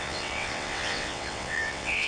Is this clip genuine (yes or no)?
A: no